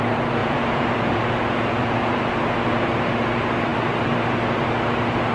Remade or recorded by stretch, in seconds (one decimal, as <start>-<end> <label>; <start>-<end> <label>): 0.0-0.4 recorded; 0.4-2.2 remade; 2.2-5.3 recorded